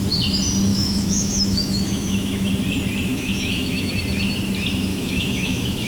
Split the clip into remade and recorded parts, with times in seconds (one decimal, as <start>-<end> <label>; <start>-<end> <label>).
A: 0.0-0.7 recorded; 0.7-2.5 remade; 2.5-3.1 recorded; 3.1-3.9 remade; 3.9-4.9 recorded; 4.9-5.9 remade